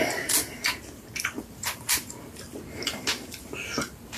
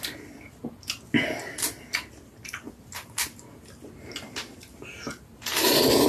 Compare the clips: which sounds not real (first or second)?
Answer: first